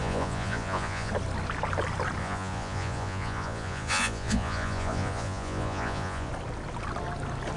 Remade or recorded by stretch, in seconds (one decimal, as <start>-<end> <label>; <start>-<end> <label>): 0.0-1.1 remade; 1.1-2.2 recorded; 2.2-6.3 remade; 6.3-7.6 recorded